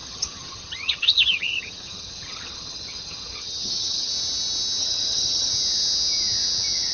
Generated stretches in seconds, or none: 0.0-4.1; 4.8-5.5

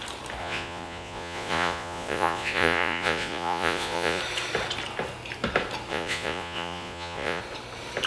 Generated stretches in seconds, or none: 0.4-4.2; 5.9-7.4

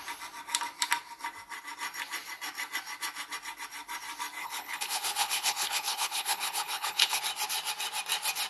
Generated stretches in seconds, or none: 4.4-7.2